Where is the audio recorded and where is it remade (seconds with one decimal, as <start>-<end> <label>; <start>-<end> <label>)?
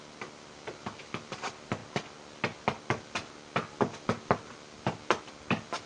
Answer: 0.0-5.9 recorded